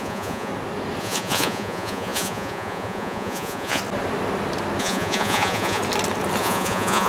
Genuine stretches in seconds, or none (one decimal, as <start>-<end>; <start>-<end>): 0.5-1.0; 3.8-4.8; 5.8-6.4